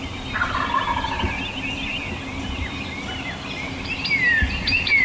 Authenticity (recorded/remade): recorded